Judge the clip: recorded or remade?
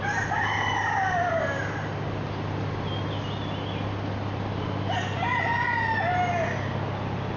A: recorded